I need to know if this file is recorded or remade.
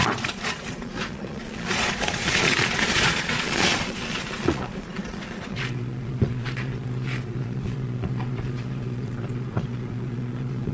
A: remade